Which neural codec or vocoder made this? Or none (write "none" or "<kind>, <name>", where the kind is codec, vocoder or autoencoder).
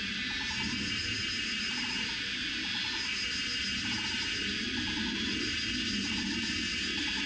none